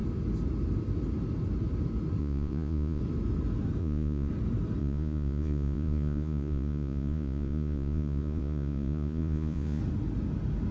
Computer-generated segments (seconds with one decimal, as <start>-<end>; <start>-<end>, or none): 2.2-3.0; 3.8-4.3; 4.8-9.8